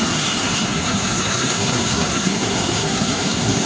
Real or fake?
fake